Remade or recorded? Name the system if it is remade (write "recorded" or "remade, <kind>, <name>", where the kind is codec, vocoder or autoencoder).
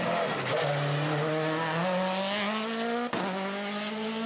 recorded